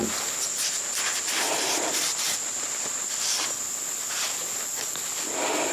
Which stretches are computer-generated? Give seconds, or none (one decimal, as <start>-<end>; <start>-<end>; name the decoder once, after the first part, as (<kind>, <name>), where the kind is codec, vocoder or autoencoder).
none